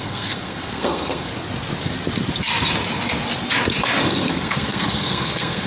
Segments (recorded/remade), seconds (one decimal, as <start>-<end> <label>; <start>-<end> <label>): 0.0-1.3 remade; 1.3-4.0 recorded; 4.0-5.7 remade